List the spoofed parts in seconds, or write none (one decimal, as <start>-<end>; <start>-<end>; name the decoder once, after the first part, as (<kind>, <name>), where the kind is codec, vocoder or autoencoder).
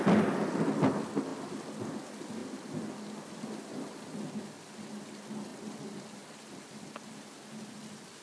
5.5-7.1 (vocoder, BigVGAN v2)